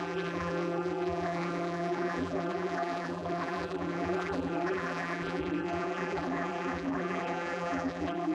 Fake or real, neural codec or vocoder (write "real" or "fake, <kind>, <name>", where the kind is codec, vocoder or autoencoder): fake, vocoder, BigVGAN v2